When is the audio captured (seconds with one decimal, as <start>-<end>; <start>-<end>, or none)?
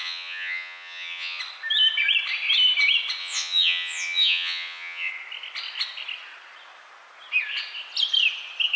1.4-3.2; 5.1-8.8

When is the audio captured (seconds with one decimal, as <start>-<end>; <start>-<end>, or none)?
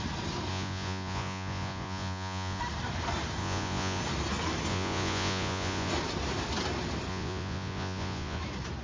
0.0-0.5; 2.6-3.4; 4.0-4.7; 5.9-7.1; 8.4-8.8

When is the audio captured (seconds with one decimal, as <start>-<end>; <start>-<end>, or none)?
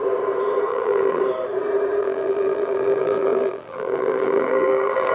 0.0-0.7; 1.2-2.0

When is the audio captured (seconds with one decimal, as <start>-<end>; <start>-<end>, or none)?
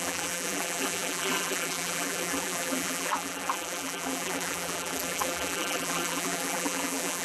none